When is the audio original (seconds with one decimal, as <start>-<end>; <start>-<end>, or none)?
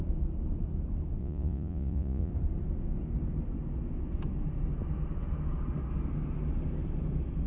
0.0-1.2; 2.3-7.5